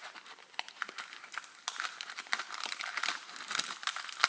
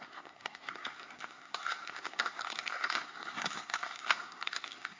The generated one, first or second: second